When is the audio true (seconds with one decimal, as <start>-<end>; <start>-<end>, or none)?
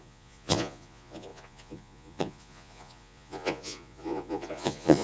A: none